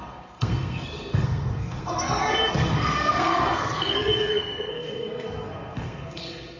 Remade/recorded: remade